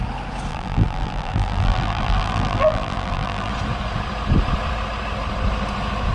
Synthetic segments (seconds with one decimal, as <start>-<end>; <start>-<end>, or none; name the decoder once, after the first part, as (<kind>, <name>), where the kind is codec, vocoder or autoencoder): 0.5-3.5 (vocoder, BigVGAN v2)